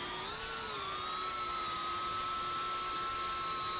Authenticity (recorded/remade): recorded